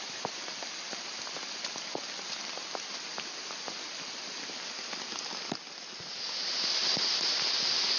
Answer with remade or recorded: recorded